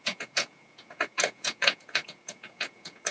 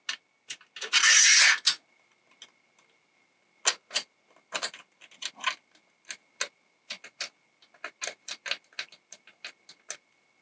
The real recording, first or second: second